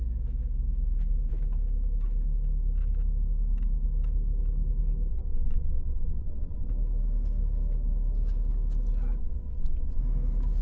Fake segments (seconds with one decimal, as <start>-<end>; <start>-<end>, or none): 5.1-6.7; 9.2-10.0